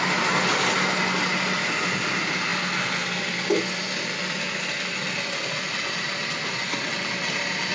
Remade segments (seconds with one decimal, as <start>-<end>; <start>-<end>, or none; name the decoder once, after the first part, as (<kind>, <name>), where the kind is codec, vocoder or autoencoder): none